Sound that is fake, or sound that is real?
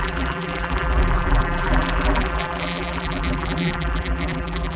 fake